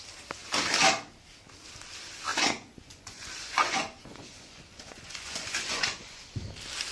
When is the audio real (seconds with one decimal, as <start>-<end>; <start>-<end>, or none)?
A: 0.0-2.3; 6.2-6.9